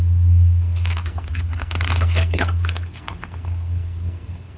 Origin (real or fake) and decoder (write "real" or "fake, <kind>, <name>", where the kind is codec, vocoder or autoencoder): fake, codec, SNAC